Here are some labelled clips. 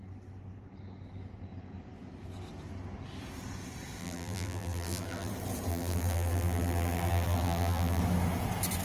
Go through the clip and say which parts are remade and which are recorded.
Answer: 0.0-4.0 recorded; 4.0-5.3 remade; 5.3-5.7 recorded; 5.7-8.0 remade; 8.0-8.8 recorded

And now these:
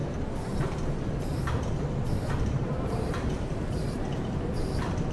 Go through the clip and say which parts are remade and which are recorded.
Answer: 0.0-2.3 recorded; 2.3-5.1 remade

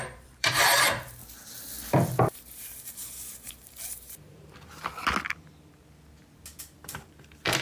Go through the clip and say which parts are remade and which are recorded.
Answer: 0.0-1.2 remade; 1.2-2.2 recorded; 2.2-4.9 remade; 4.9-6.6 recorded; 6.6-7.6 remade